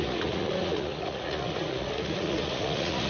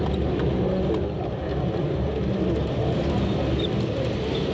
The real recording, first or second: second